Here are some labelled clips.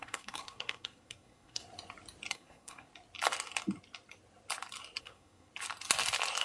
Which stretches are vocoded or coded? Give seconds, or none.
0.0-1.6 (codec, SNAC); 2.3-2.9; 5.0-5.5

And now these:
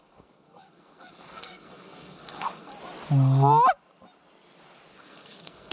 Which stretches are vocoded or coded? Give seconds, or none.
0.0-2.7 (codec, SNAC); 5.0-5.7

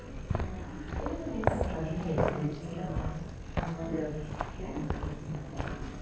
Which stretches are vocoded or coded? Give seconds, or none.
0.0-0.9 (codec, SNAC); 2.2-4.0; 4.6-6.0

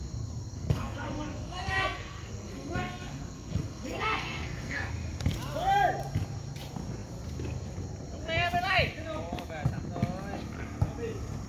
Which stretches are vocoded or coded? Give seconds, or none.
0.5-4.9 (codec, SNAC)

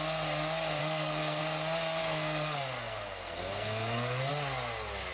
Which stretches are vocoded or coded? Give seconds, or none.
0.8-1.4 (codec, SNAC); 2.0-4.3

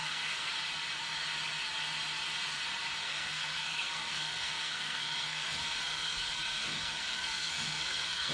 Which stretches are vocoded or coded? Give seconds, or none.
0.0-0.5 (codec, SNAC); 3.0-8.3